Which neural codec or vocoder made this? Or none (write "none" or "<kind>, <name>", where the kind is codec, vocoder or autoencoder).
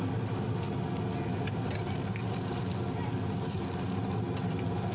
none